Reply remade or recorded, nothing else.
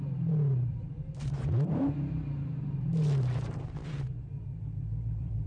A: remade